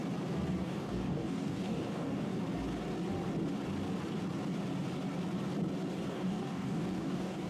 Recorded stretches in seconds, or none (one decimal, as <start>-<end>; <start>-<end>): 0.0-0.6; 2.3-6.1